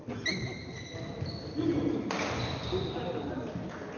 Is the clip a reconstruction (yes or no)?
no